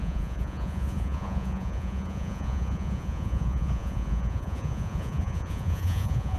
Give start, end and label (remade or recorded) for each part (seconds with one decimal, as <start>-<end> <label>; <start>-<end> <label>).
0.0-6.4 remade